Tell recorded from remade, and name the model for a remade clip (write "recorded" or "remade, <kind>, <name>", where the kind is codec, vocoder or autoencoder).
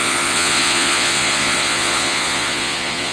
remade, vocoder, Vocos